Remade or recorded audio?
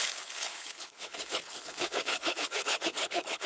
remade